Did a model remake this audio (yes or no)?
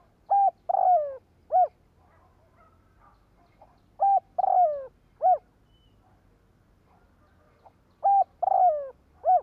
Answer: no